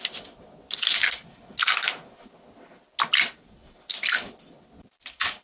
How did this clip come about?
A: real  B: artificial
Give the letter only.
A